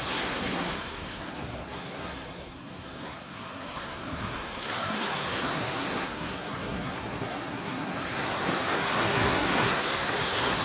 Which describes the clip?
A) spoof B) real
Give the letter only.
A